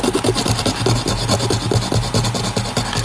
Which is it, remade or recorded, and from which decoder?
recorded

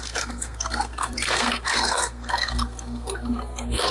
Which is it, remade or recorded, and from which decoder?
remade, codec, SNAC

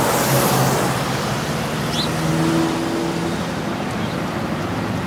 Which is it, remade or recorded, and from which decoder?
recorded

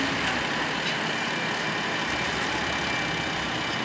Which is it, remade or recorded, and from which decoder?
recorded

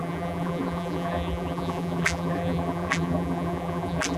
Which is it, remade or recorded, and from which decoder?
remade, vocoder, BigVGAN v2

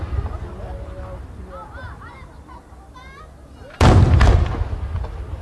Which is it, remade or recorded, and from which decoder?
recorded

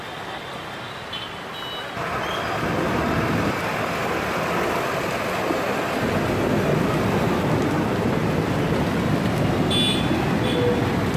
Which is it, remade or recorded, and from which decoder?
recorded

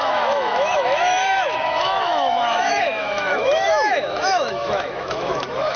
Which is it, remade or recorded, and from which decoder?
remade, autoencoder, DAC-VAE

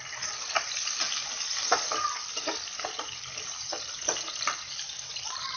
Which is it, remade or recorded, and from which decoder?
recorded